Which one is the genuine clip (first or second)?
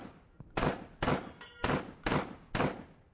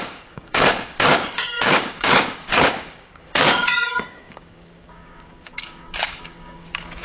first